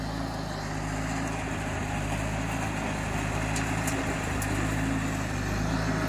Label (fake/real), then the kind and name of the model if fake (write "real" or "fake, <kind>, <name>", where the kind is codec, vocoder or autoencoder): real